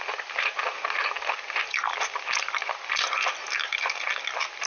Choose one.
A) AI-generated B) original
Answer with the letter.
B